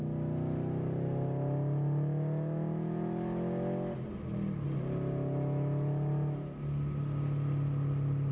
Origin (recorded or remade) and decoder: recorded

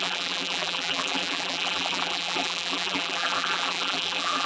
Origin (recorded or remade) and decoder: remade, vocoder, BigVGAN v2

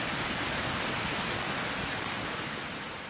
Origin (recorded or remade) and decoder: recorded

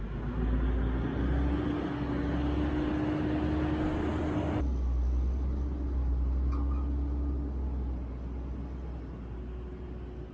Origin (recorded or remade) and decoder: recorded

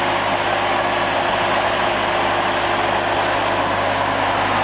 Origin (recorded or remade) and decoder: recorded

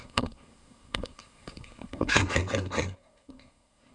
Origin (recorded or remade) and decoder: remade, codec, SNAC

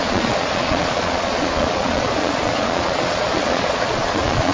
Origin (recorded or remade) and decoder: remade, vocoder, Vocos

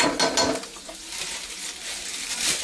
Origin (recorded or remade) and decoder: recorded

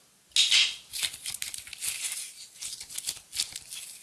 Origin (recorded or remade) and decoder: recorded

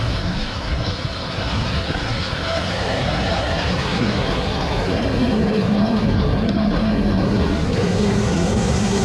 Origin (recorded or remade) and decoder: remade, codec, SNAC